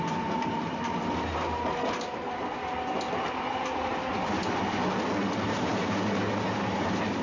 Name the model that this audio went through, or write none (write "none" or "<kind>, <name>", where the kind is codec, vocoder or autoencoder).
none